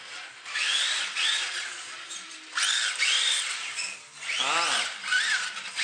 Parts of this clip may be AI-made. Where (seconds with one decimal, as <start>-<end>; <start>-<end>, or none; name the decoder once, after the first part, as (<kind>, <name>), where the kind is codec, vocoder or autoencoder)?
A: none